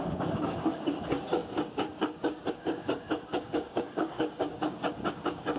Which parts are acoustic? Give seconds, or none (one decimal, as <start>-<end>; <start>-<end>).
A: none